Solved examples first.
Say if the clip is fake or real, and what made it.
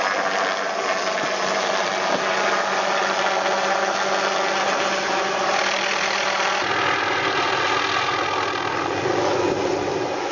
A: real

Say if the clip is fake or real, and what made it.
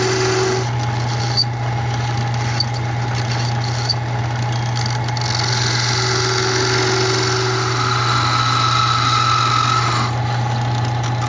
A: real